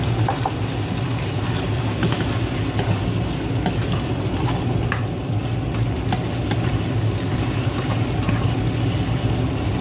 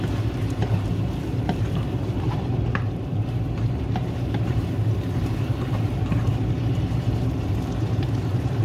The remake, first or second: second